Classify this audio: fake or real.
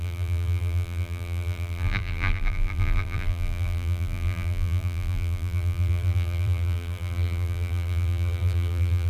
fake